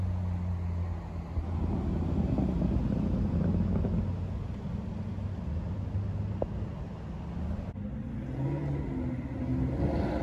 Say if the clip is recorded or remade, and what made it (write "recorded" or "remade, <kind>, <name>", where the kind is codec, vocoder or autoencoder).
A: recorded